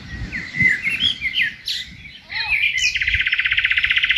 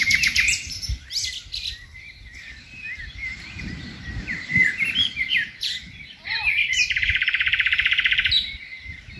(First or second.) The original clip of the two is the first